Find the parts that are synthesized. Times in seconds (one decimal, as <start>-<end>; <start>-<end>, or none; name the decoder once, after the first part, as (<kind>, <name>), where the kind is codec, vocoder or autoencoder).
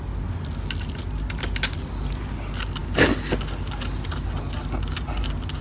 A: none